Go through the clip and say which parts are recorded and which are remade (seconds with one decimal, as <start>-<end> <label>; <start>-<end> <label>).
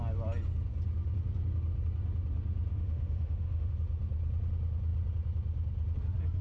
0.0-2.7 recorded; 2.7-3.7 remade; 3.7-6.4 recorded